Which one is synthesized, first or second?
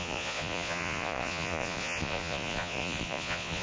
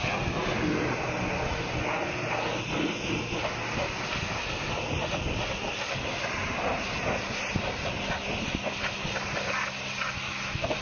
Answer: first